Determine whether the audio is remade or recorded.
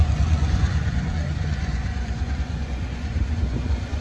remade